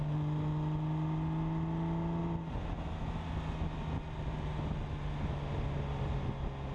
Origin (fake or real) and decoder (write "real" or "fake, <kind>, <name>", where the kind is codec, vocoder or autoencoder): real